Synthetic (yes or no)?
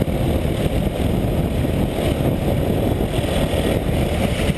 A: no